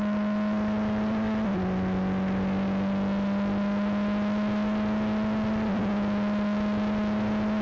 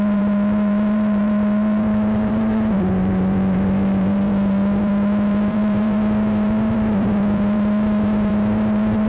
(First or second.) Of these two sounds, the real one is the first